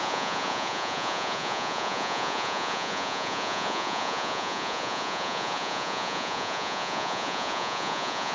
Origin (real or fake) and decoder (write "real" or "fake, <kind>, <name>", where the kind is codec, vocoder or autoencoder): fake, vocoder, Vocos